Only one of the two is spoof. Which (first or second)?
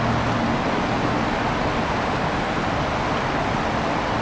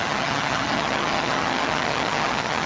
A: second